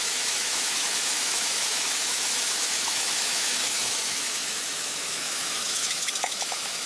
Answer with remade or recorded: remade